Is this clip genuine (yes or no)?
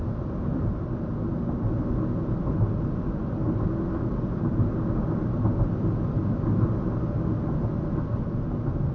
yes